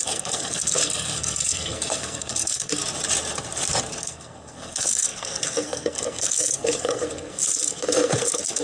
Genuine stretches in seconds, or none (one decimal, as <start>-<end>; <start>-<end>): 2.8-4.0